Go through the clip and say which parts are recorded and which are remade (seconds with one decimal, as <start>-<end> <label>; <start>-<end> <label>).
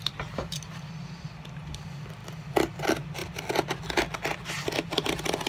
0.0-5.5 recorded